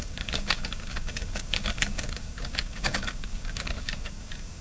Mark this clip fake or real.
fake